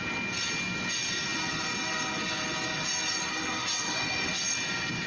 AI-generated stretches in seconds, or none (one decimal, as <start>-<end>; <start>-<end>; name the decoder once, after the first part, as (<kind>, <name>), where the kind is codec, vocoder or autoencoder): 3.3-4.3 (codec, SNAC)